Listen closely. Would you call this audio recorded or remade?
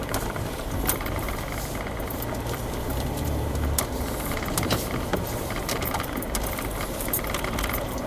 remade